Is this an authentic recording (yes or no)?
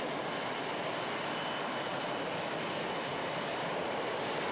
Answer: yes